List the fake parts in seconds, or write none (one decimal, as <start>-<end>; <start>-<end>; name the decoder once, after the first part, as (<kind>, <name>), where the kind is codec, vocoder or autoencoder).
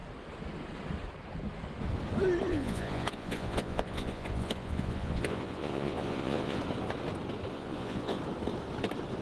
2.5-6.6 (vocoder, Vocos); 7.5-8.2